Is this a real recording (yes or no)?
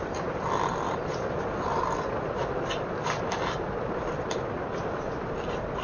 yes